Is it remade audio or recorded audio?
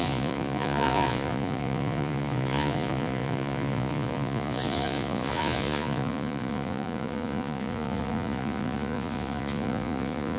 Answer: remade